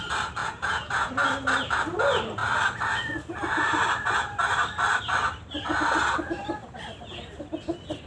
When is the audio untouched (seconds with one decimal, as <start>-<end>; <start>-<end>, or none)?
0.0-0.4; 1.1-8.1